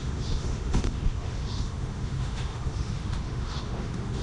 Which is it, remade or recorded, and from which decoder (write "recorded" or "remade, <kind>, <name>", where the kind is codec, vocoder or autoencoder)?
remade, autoencoder, DAC-VAE